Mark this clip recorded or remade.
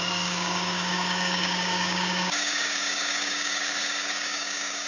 remade